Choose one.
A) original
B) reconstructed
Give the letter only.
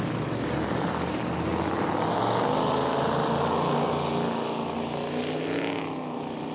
A